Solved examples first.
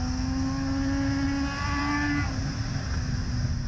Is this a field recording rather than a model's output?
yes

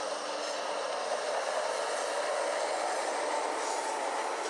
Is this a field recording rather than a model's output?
yes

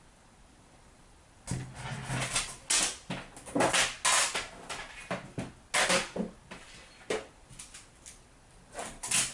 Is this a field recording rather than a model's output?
yes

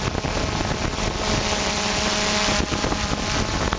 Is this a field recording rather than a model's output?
yes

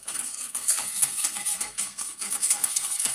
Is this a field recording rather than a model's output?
no